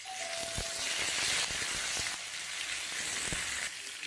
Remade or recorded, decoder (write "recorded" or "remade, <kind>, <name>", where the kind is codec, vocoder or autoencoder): recorded